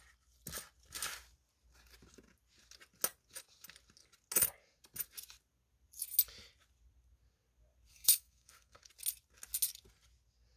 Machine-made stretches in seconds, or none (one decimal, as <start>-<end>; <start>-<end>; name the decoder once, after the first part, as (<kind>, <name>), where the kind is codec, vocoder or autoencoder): 7.9-8.8 (codec, SNAC)